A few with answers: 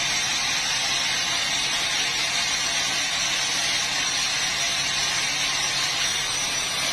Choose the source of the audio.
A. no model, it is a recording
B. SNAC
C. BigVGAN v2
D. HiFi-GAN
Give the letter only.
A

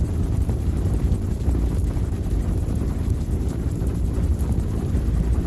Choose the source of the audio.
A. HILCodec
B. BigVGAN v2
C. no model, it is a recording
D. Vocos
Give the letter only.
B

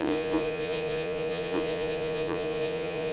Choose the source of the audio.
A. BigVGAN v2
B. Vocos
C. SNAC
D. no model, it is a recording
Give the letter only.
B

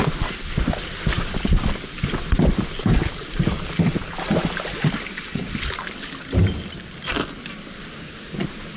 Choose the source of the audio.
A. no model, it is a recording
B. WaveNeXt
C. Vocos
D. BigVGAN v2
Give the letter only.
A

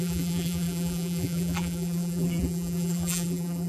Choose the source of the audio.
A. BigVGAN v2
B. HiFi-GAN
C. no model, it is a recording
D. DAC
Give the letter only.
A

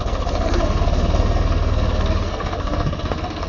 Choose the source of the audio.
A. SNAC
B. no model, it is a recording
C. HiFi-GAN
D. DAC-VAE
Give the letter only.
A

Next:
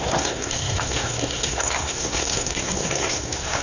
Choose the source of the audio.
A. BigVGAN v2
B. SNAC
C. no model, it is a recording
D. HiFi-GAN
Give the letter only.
B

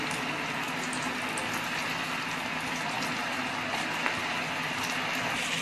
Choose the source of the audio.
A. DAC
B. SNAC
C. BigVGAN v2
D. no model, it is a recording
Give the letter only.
D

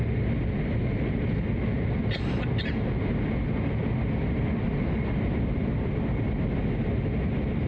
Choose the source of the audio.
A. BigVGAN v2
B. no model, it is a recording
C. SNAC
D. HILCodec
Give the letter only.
B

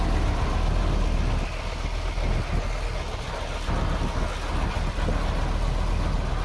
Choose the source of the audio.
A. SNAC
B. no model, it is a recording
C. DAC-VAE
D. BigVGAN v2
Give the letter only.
B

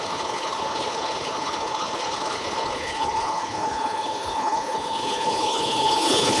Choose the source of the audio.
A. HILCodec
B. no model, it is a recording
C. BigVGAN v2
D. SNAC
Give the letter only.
A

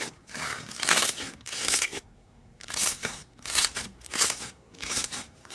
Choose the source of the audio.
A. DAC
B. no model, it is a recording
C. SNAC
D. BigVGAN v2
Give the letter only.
C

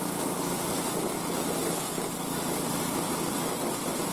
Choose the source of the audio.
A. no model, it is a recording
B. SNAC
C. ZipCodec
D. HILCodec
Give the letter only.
A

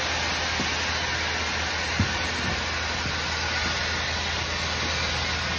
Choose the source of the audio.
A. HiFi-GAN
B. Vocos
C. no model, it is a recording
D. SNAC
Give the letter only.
C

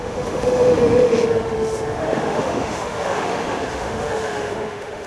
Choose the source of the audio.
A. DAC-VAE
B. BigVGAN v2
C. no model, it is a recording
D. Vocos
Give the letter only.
A